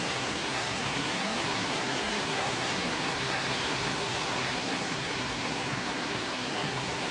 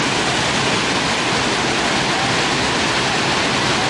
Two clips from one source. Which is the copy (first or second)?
first